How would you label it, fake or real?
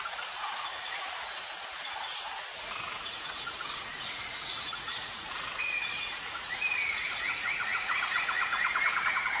fake